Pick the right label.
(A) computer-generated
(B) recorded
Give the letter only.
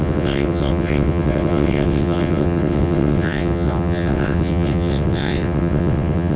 A